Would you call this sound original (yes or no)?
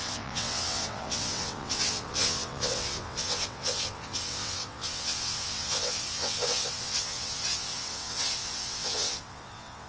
no